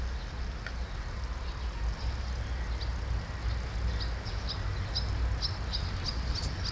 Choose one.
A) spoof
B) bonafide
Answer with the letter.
B